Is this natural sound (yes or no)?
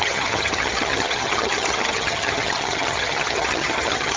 no